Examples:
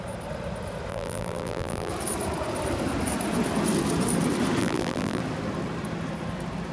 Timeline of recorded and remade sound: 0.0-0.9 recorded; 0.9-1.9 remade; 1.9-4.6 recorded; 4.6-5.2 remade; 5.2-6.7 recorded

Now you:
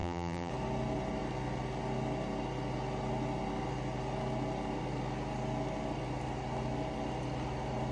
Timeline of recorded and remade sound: 0.0-0.5 remade; 0.5-7.9 recorded